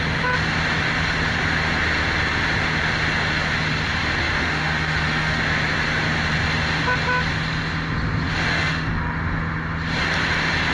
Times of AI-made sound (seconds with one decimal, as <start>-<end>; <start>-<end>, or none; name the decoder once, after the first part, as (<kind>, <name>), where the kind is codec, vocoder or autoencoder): 4.2-5.4 (autoencoder, DAC-VAE); 8.5-9.0